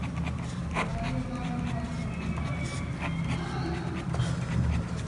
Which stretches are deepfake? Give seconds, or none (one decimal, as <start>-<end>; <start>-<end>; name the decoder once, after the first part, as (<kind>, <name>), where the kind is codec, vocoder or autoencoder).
none